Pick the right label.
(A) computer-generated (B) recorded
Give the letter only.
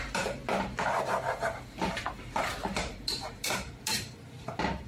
A